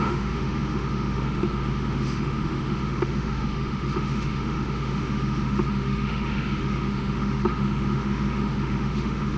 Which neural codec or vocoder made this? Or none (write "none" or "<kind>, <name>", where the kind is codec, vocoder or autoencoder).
autoencoder, DAC-VAE